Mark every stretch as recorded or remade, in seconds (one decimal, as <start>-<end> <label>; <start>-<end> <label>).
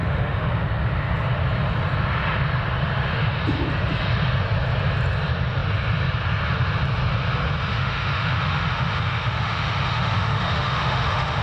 0.0-0.5 remade; 0.5-7.7 recorded; 7.7-11.4 remade